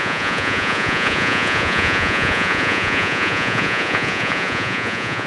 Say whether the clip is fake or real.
fake